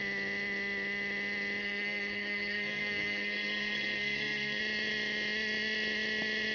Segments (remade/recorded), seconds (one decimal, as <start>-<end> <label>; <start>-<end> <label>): 0.0-1.6 recorded; 1.6-4.6 remade; 4.6-6.5 recorded